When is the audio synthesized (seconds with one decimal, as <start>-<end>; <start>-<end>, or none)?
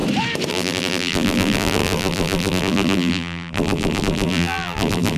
0.5-5.2